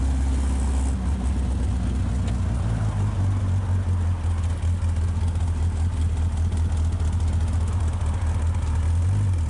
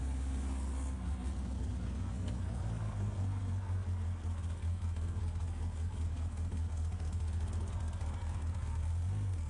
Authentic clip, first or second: first